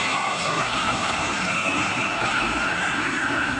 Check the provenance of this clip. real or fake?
fake